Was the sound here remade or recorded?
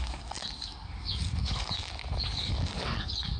remade